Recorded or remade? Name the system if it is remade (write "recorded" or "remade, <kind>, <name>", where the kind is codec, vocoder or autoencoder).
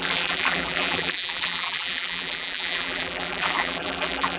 remade, vocoder, BigVGAN v2